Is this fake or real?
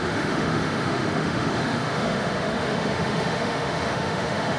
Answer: fake